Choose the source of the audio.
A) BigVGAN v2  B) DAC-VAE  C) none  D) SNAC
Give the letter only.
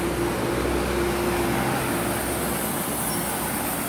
C